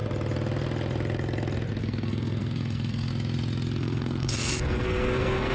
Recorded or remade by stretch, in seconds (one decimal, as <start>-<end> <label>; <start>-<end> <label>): 0.0-1.8 recorded; 1.8-3.1 remade; 3.1-3.8 recorded; 3.8-5.5 remade